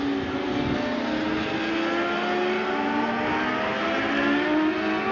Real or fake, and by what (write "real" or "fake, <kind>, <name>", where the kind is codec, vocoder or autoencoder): real